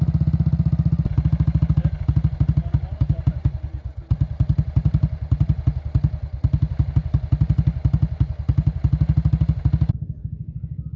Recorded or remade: recorded